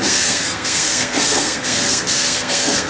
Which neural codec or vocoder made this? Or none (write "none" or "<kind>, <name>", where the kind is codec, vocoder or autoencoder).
codec, SNAC